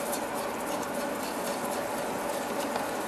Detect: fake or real real